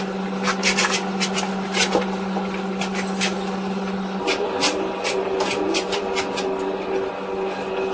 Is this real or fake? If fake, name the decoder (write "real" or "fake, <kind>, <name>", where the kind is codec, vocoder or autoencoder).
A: real